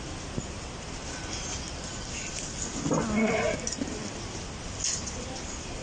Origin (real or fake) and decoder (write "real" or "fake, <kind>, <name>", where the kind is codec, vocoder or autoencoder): real